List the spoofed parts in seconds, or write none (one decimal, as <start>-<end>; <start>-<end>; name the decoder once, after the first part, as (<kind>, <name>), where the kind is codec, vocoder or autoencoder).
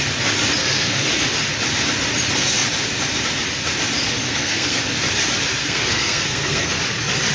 0.6-1.1 (codec, SNAC); 4.3-4.8; 5.6-6.8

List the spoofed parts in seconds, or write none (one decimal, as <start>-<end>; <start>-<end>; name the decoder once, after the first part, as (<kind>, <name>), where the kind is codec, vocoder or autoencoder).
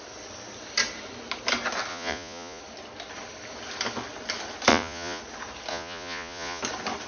1.9-2.6 (vocoder, Vocos); 4.7-5.2; 5.7-6.6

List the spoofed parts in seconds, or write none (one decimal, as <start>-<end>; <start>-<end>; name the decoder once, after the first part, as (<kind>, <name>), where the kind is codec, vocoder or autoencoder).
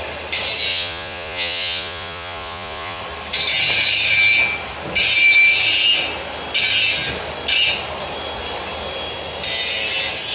0.7-3.0 (vocoder, Vocos)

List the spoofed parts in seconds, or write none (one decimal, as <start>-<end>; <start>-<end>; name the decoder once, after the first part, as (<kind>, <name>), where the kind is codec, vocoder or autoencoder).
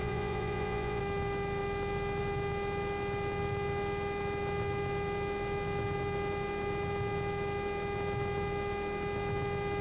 0.0-1.0 (vocoder, Vocos)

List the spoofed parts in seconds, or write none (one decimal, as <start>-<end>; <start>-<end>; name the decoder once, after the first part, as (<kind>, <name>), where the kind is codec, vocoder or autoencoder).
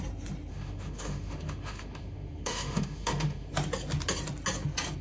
0.5-3.5 (autoencoder, DAC-VAE)